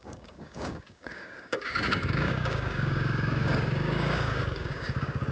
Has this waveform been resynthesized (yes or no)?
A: yes